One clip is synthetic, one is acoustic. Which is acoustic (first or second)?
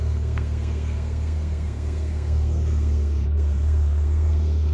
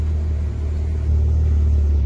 second